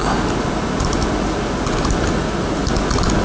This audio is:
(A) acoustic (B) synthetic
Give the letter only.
A